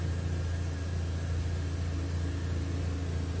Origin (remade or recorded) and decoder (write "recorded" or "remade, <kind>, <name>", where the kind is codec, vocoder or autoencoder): recorded